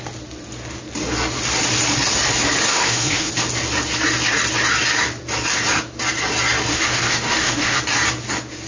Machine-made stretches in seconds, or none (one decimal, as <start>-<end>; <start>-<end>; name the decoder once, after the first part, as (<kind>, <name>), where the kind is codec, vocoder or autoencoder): 2.7-3.3 (autoencoder, DAC-VAE); 6.7-7.8